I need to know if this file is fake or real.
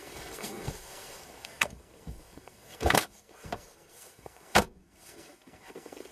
fake